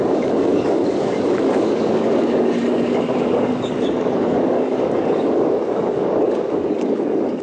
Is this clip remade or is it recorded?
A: remade